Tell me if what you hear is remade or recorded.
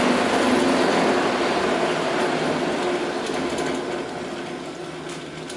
recorded